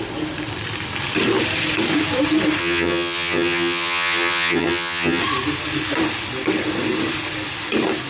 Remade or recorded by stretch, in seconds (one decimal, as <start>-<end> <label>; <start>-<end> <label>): 0.0-2.6 recorded; 2.6-5.2 remade; 5.2-8.1 recorded